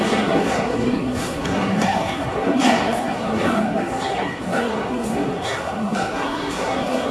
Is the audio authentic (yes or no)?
no